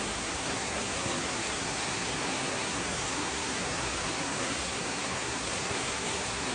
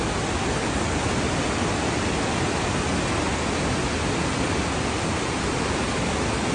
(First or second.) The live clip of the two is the second